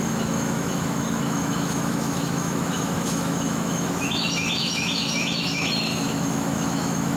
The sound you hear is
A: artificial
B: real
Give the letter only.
A